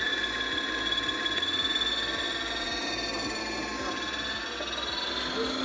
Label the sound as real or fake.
real